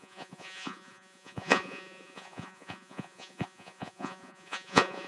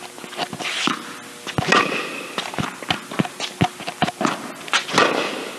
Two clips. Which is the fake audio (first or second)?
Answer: first